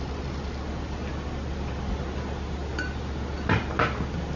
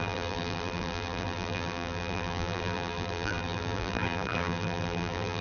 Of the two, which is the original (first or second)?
first